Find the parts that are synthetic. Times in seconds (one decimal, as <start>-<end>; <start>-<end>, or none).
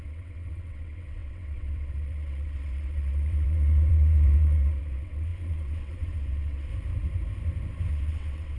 0.0-6.7; 7.9-8.6